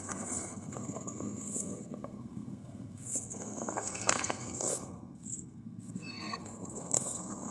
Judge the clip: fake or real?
fake